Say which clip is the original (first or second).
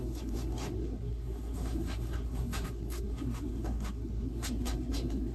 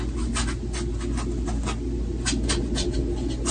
second